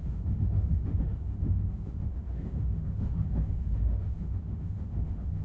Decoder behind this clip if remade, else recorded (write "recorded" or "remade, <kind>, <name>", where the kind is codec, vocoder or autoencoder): remade, autoencoder, DAC-VAE